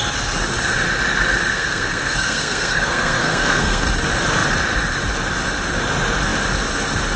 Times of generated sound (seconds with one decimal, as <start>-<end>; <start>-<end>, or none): 1.5-3.8